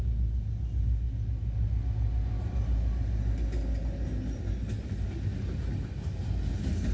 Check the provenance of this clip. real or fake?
real